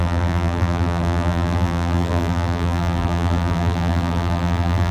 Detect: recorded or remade remade